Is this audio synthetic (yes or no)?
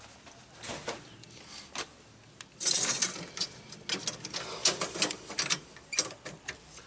no